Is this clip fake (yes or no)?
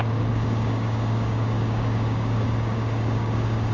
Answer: yes